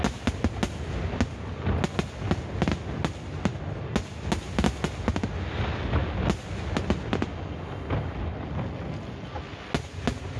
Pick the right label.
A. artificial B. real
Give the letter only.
B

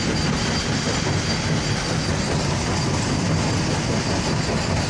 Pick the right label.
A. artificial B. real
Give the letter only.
B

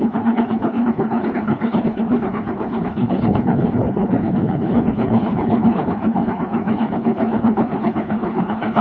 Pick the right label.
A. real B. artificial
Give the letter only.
B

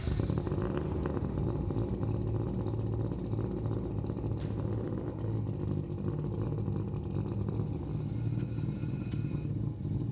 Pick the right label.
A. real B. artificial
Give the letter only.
A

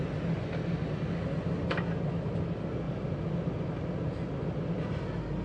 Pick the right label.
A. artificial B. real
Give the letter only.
B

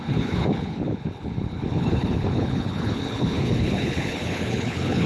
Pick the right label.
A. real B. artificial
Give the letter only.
B